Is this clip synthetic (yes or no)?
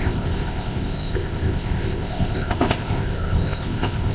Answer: yes